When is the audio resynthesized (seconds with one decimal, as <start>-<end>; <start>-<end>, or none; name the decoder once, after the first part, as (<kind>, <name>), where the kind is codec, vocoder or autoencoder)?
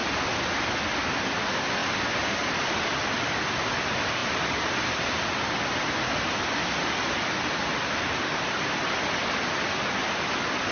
none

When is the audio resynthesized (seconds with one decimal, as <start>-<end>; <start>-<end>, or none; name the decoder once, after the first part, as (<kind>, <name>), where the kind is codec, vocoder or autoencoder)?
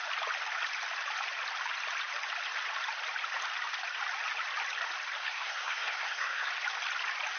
5.2-6.5 (codec, SNAC)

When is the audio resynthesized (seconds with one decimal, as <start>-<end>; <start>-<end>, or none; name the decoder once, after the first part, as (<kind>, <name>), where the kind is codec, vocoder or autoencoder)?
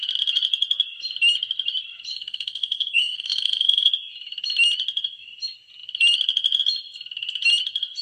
2.1-3.9 (codec, SNAC)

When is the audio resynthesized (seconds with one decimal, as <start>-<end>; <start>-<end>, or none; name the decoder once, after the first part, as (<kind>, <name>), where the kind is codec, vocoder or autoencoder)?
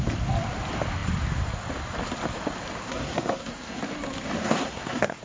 2.8-3.8 (codec, SNAC); 4.4-5.2